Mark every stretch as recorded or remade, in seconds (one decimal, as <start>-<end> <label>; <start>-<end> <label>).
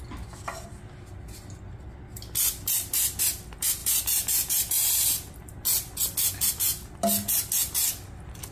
0.0-8.5 recorded